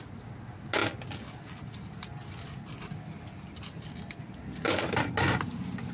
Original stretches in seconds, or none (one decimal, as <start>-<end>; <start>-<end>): 0.0-5.9